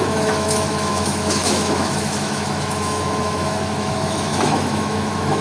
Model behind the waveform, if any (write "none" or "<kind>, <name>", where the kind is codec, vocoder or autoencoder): autoencoder, DAC-VAE